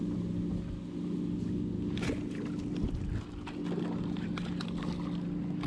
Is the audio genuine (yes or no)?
yes